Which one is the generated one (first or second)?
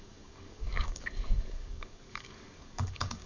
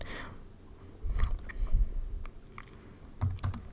first